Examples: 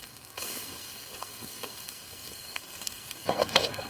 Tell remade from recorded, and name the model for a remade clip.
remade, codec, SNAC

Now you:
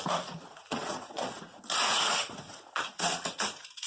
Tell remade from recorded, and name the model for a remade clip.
remade, vocoder, Vocos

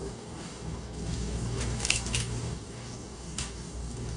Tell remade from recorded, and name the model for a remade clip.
remade, codec, DAC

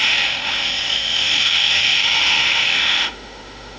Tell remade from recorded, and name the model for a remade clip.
remade, autoencoder, DAC-VAE